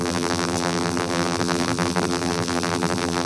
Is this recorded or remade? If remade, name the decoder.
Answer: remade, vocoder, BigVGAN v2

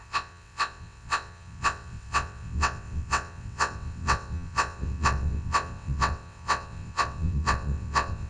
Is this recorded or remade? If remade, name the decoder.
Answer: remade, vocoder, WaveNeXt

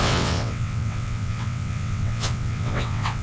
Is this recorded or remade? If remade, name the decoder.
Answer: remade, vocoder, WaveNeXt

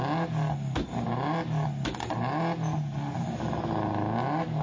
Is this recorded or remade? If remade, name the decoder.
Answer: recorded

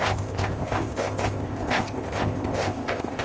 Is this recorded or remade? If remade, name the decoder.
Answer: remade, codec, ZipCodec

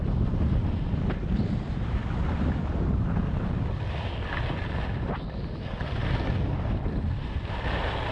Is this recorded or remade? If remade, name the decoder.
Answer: recorded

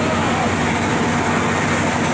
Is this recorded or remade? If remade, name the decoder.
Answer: recorded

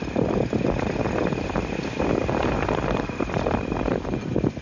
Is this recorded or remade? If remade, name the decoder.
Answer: recorded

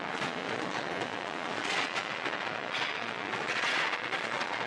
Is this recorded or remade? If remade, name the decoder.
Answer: remade, vocoder, Vocos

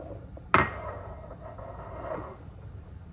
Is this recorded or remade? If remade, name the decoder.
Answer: recorded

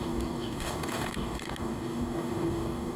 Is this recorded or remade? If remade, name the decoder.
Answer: remade, codec, DAC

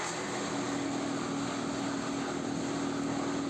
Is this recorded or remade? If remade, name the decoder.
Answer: recorded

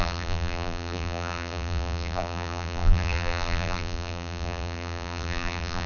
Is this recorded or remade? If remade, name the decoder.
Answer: remade, vocoder, BigVGAN v2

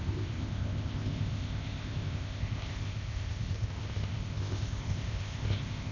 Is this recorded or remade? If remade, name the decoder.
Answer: remade, codec, ZipCodec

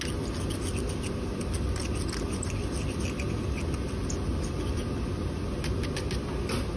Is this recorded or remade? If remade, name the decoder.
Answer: recorded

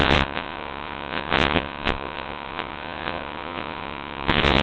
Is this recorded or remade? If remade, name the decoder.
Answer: remade, vocoder, WaveNeXt